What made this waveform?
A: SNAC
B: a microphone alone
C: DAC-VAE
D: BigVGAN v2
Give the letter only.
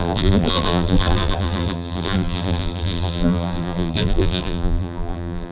D